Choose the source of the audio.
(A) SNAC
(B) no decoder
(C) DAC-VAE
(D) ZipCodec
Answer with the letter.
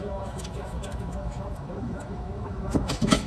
C